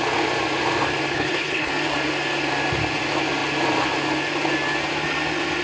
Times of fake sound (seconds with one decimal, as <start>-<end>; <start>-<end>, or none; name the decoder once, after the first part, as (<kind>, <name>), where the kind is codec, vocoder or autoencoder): 1.1-1.7 (codec, HILCodec)